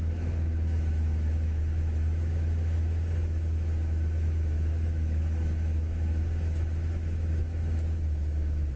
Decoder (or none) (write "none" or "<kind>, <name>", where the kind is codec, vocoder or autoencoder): autoencoder, DAC-VAE